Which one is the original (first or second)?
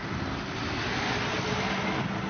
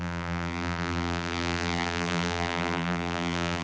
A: first